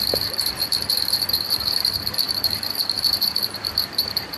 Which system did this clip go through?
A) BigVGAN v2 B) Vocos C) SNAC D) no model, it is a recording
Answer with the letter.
A